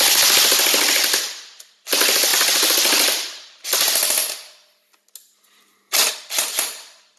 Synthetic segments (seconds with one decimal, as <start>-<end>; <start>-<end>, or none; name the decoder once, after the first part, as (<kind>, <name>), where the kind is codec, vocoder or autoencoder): none